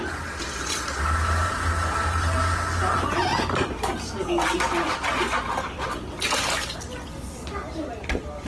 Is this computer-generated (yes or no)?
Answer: no